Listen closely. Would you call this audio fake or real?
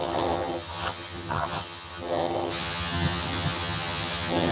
fake